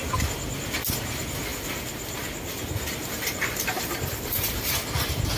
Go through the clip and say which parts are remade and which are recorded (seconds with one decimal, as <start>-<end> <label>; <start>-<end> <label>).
0.0-1.5 recorded; 1.5-4.7 remade; 4.7-5.4 recorded